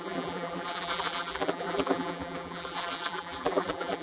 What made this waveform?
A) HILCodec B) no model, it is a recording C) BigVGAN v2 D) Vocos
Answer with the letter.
C